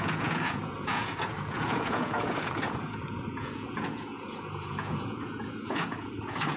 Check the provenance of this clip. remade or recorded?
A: remade